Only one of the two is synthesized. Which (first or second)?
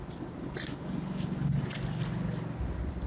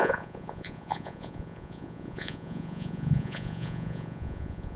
second